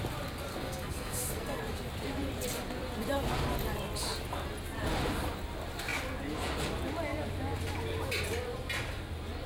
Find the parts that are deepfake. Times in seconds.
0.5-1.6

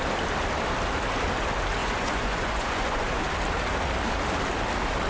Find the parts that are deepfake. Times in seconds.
1.8-3.2

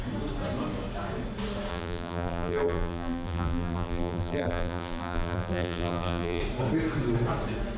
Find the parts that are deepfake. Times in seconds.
1.7-6.4

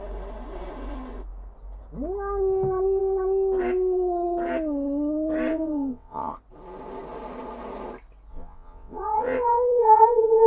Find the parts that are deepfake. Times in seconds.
5.5-6.3; 8.3-10.5

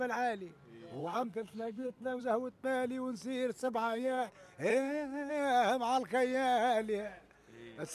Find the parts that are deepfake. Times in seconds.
1.0-2.2; 3.6-4.3; 4.7-5.3

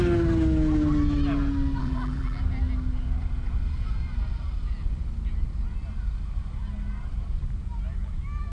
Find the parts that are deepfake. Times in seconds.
1.8-2.4

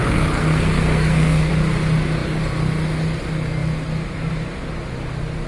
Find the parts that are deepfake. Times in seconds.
0.0-1.5